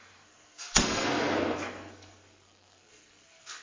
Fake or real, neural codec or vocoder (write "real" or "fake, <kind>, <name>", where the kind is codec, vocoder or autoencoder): fake, codec, SNAC